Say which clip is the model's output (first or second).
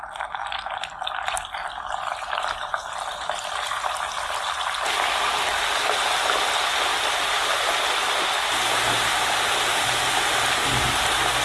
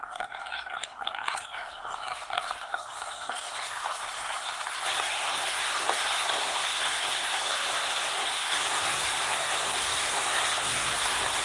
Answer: second